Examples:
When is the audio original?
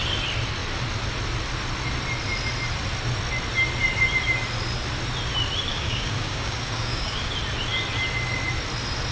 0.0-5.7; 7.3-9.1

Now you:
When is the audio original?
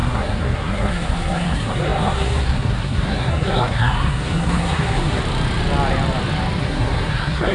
5.2-6.6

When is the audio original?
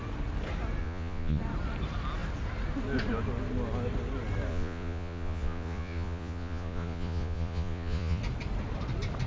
0.0-0.8; 1.4-4.5; 8.2-9.3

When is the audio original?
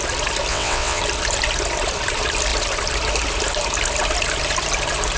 0.0-0.5; 1.0-5.2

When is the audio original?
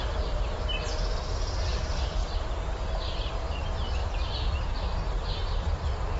0.8-4.0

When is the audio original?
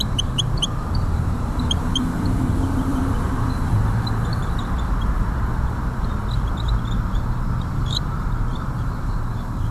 none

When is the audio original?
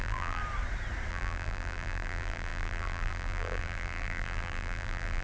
0.4-1.1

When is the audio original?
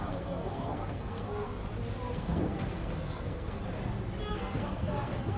1.6-2.1; 3.6-4.3